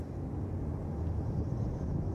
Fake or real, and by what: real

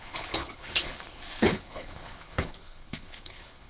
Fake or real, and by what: fake, codec, HILCodec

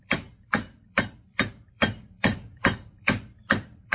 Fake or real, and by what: fake, vocoder, BigVGAN v2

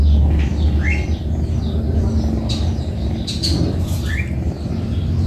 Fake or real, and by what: real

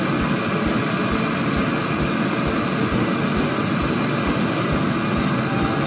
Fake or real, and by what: real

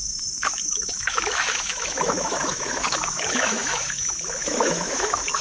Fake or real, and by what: fake, autoencoder, DAC-VAE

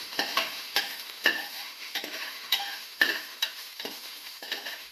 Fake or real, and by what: fake, autoencoder, DAC-VAE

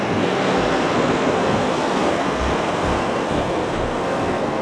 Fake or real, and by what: fake, codec, SNAC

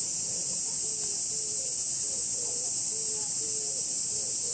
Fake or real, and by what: real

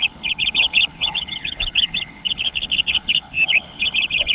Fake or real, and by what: fake, codec, HILCodec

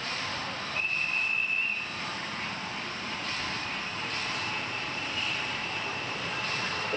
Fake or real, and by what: fake, vocoder, BigVGAN v2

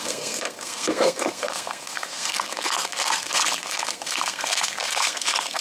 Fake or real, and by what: fake, codec, SNAC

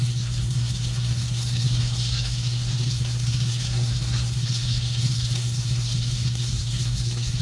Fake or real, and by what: fake, codec, SNAC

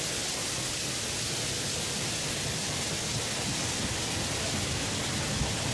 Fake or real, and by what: real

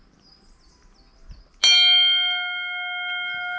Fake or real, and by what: real